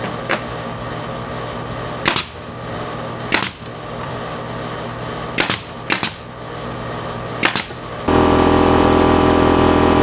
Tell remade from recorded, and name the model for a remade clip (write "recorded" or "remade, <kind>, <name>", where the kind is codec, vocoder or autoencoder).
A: recorded